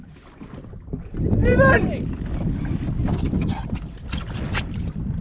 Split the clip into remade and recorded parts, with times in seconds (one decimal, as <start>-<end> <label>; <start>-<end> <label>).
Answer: 0.0-5.2 recorded